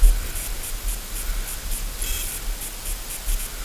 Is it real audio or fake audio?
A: real